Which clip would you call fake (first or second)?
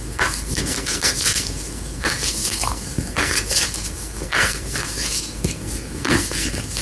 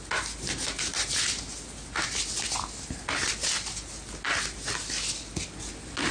first